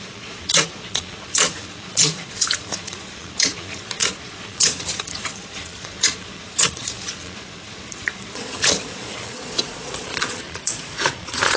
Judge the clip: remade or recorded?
remade